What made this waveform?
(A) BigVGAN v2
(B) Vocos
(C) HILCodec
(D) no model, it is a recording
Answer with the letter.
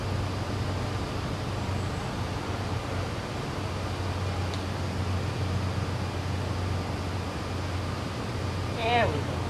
D